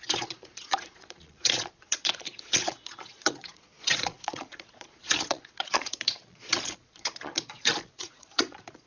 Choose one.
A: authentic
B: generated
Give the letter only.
B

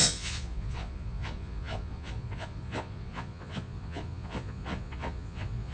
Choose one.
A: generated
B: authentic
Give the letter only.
A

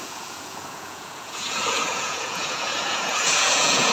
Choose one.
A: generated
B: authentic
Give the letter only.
A